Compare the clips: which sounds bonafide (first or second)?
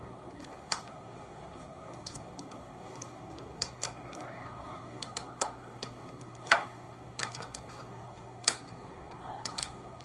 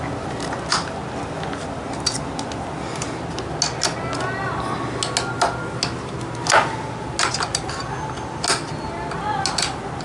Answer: second